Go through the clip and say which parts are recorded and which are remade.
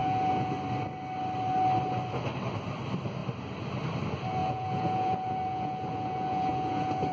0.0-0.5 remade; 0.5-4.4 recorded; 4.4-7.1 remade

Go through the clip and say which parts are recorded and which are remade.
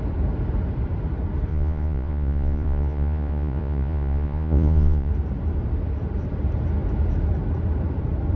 0.0-1.5 recorded; 1.5-5.1 remade; 5.1-8.4 recorded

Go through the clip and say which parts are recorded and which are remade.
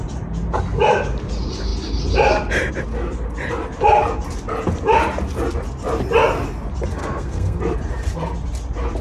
0.0-7.0 recorded; 7.0-7.6 remade; 7.6-9.0 recorded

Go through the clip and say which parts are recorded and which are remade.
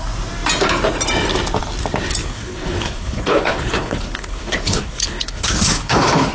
0.0-2.2 recorded; 2.2-6.3 remade